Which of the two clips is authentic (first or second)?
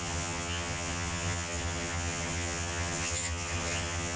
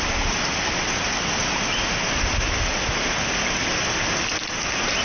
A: second